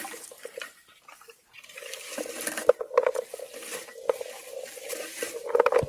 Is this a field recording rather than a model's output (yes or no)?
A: yes